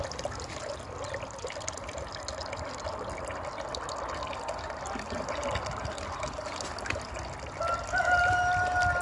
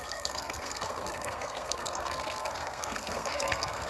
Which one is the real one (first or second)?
first